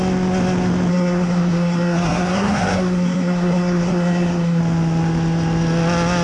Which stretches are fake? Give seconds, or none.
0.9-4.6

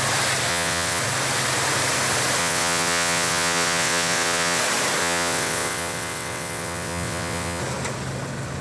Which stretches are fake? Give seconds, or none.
0.5-1.0; 2.4-4.6; 5.0-7.6

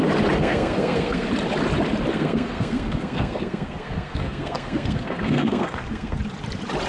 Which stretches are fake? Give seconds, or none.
0.4-1.3; 2.1-6.2

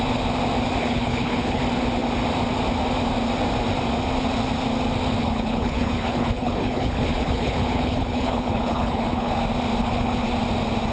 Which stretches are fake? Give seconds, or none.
0.8-1.6; 5.2-9.4; 9.8-10.3

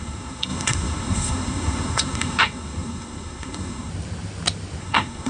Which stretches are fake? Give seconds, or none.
0.0-3.9; 4.8-5.3

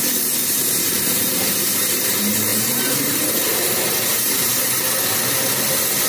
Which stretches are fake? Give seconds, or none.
0.4-2.1; 2.5-3.2; 4.1-4.9

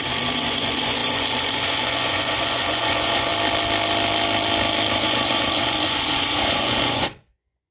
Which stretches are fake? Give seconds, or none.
0.0-3.3; 5.0-7.7